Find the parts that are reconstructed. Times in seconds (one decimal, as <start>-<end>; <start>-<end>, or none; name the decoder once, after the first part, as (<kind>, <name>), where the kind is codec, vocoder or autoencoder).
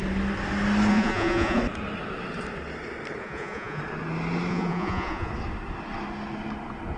0.9-1.6 (vocoder, Vocos); 3.2-3.8; 4.5-5.3